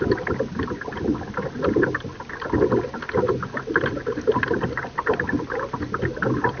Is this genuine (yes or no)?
yes